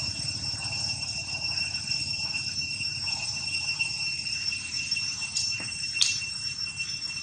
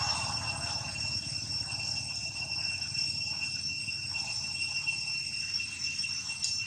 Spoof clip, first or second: first